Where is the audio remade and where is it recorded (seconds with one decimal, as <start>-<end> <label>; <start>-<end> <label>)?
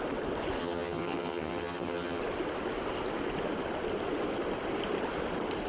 0.0-0.6 recorded; 0.6-2.2 remade; 2.2-5.7 recorded